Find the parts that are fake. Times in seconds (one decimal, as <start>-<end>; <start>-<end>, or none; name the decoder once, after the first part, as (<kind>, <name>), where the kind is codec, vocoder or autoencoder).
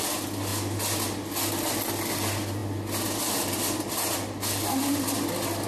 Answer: none